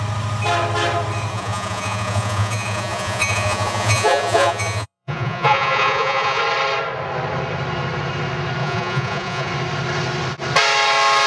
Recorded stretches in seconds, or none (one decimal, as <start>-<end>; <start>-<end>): 0.0-1.3; 6.4-8.6; 9.5-11.3